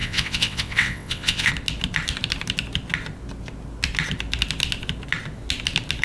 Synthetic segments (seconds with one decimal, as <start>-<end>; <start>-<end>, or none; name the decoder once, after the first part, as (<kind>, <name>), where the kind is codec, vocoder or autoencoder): 0.0-1.5 (vocoder, WaveNeXt)